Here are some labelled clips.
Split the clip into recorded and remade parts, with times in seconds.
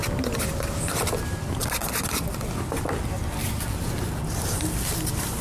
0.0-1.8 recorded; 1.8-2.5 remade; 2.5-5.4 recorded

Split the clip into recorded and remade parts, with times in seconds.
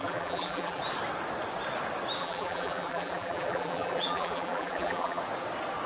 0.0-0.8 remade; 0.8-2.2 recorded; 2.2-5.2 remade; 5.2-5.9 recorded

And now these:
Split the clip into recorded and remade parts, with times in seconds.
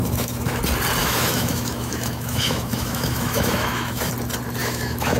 0.0-0.6 remade; 0.6-1.0 recorded; 1.0-4.1 remade; 4.1-4.6 recorded; 4.6-5.2 remade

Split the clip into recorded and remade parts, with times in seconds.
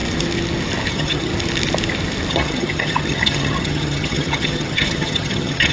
0.0-0.9 recorded; 0.9-1.3 remade; 1.3-2.3 recorded; 2.3-5.7 remade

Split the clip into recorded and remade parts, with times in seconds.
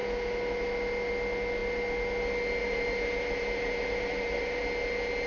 0.0-2.6 recorded; 2.6-4.6 remade; 4.6-5.3 recorded